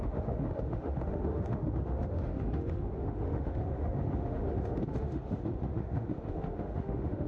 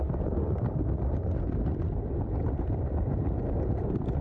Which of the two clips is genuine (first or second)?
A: second